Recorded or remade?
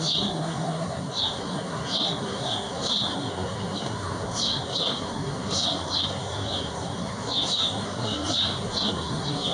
remade